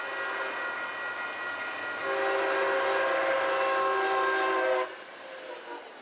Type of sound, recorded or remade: recorded